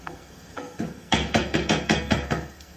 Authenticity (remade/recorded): remade